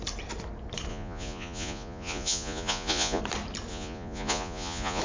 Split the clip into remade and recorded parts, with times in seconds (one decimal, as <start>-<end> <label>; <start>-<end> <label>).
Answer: 0.0-0.9 recorded; 0.9-3.2 remade; 3.2-3.7 recorded; 3.7-5.0 remade

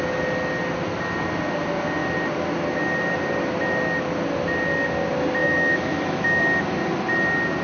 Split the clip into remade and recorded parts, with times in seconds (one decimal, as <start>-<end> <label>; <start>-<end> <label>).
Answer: 0.0-5.4 recorded; 5.4-6.4 remade; 6.4-7.6 recorded

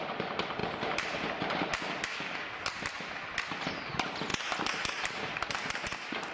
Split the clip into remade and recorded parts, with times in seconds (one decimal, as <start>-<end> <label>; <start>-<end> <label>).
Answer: 0.0-6.3 recorded

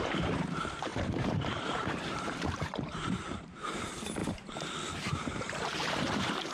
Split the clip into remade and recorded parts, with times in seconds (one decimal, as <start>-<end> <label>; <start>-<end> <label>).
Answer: 0.0-4.2 remade; 4.2-5.0 recorded; 5.0-6.5 remade

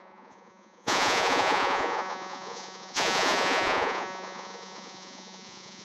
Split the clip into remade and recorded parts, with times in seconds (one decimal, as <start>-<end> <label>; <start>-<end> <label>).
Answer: 0.0-5.8 remade

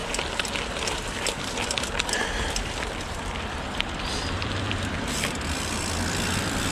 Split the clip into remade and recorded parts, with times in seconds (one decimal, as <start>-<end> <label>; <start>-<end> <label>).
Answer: 0.0-0.7 recorded; 0.7-6.7 remade

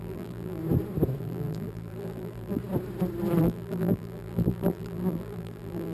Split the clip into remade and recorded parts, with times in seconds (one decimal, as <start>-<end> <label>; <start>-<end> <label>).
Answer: 0.0-0.6 remade; 0.6-1.2 recorded; 1.2-2.6 remade; 2.6-3.4 recorded; 3.4-5.9 remade